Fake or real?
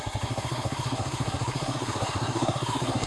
fake